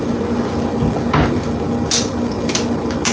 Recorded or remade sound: recorded